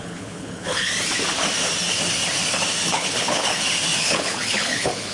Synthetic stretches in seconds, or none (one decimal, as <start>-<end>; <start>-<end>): 0.0-0.9; 2.9-3.5; 4.0-5.1